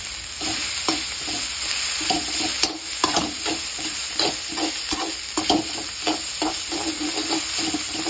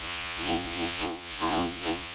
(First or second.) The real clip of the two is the first